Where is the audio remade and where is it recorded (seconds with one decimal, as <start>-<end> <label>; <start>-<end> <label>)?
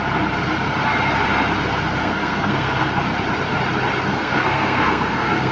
0.0-2.0 recorded; 2.0-3.0 remade; 3.0-4.1 recorded; 4.1-5.5 remade